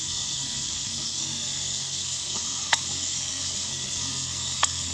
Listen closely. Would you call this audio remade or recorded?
remade